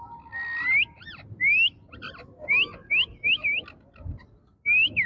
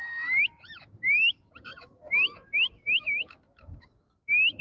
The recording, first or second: first